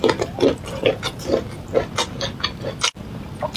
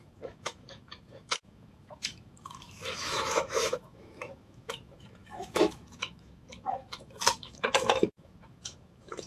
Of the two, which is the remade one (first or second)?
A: second